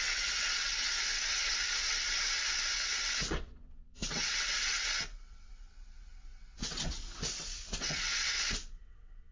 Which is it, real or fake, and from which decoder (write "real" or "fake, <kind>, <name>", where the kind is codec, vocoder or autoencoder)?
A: fake, vocoder, WaveNeXt